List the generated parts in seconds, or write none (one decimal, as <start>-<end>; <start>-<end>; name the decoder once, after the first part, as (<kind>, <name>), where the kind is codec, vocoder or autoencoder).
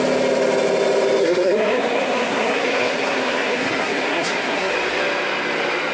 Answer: 1.2-4.7 (codec, SNAC)